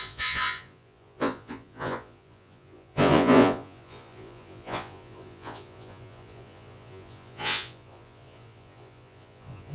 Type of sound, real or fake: fake